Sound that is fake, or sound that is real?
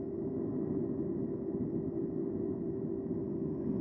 real